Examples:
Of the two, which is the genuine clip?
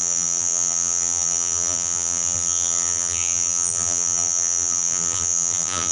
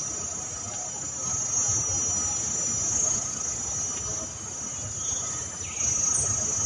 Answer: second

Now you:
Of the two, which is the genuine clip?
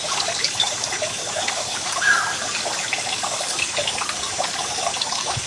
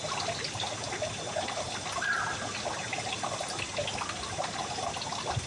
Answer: second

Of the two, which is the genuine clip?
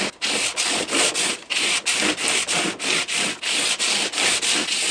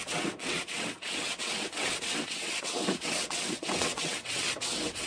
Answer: first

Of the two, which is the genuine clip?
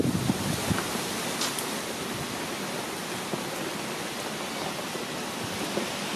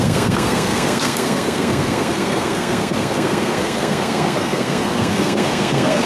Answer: first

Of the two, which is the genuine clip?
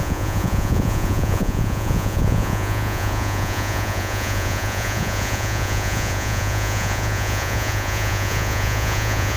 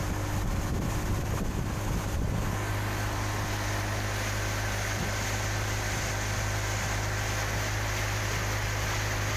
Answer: second